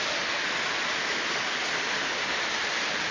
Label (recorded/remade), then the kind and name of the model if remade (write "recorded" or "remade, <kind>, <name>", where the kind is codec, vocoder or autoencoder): recorded